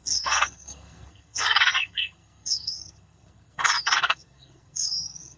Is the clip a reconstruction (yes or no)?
yes